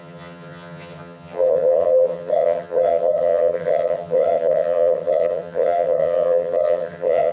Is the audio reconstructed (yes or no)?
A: yes